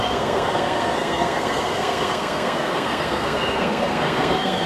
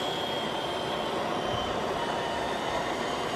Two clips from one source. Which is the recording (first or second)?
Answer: second